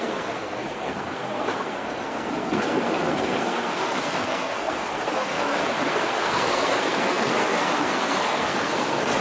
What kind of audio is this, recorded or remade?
remade